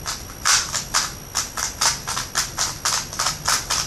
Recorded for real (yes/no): yes